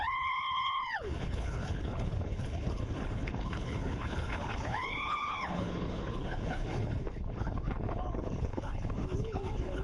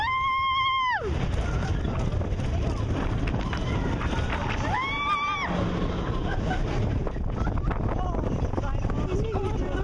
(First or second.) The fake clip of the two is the first